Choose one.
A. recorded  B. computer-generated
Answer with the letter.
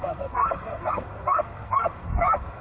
B